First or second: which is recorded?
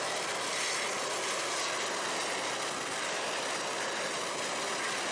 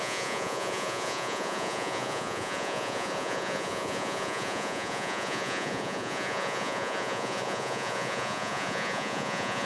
first